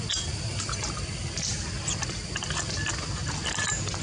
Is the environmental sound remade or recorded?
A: recorded